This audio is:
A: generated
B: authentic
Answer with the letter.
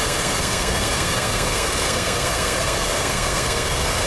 A